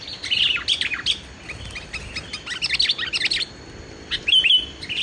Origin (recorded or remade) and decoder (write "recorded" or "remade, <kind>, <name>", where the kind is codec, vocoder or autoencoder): recorded